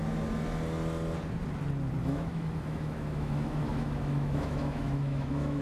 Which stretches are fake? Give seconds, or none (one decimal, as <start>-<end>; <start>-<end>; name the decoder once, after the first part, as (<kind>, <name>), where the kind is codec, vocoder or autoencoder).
2.0-5.6 (autoencoder, DAC-VAE)